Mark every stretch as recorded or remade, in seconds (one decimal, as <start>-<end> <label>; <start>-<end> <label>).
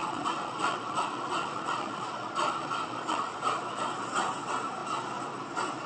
0.0-3.3 remade; 3.3-5.9 recorded